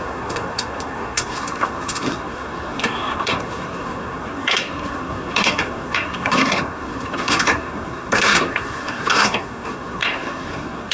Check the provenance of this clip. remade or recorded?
remade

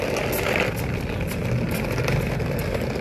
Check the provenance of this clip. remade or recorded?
recorded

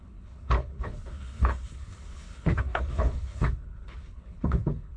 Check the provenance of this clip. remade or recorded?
remade